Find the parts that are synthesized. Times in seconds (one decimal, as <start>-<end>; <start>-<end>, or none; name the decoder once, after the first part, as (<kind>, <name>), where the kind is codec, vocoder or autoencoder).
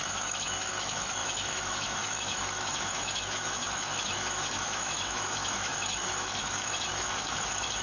0.0-7.8 (autoencoder, DAC-VAE)